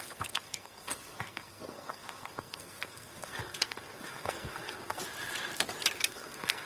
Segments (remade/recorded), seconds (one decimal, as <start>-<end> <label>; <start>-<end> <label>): 0.0-5.0 remade; 5.0-6.0 recorded; 6.0-6.7 remade